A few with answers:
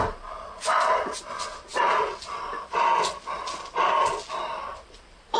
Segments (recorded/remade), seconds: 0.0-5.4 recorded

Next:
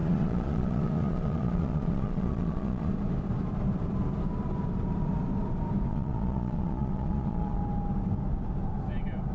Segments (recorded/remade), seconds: 0.0-2.9 remade; 2.9-5.9 recorded; 5.9-7.6 remade; 7.6-9.3 recorded

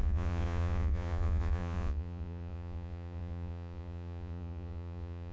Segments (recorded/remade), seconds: 0.0-5.3 remade

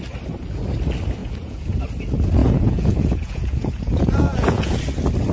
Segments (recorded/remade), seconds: 0.0-1.2 recorded; 1.2-1.8 remade; 1.8-2.4 recorded; 2.4-4.8 remade; 4.8-5.3 recorded